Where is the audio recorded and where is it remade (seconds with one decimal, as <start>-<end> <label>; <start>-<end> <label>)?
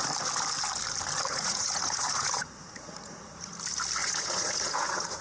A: 0.0-1.3 recorded; 1.3-3.5 remade; 3.5-4.0 recorded; 4.0-5.2 remade